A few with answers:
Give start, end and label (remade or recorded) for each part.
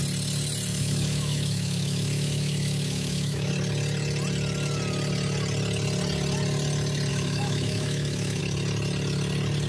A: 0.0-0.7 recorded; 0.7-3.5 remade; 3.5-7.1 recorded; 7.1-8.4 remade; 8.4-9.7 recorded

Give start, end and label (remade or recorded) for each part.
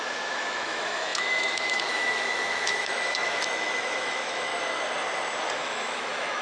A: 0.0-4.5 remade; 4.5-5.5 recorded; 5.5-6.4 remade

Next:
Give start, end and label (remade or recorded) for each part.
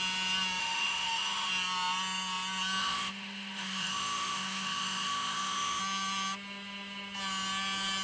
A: 0.0-0.6 recorded; 0.6-1.5 remade; 1.5-2.8 recorded; 2.8-5.8 remade; 5.8-8.0 recorded